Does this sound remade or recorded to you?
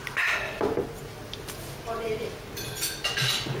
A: recorded